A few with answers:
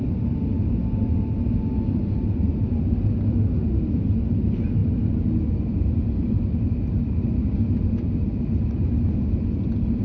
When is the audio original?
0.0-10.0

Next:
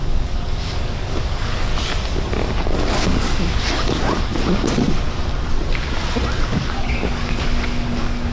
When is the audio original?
1.7-2.9; 4.3-6.4